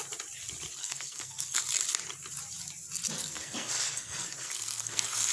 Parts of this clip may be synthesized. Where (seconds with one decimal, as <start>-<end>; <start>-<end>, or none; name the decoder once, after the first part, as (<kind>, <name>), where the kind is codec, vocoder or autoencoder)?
0.8-1.6 (codec, SNAC); 3.2-5.3